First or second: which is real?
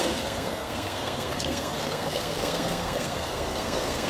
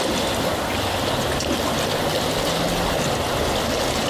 second